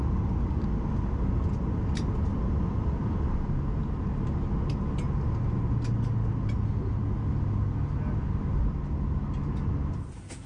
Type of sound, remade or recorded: recorded